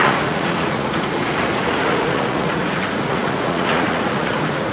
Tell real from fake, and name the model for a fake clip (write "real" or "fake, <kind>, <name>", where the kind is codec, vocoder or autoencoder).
fake, vocoder, Vocos